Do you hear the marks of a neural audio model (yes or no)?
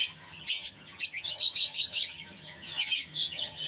yes